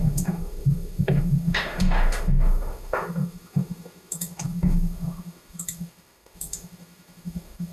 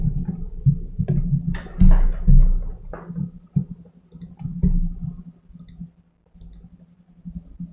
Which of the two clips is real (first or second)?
second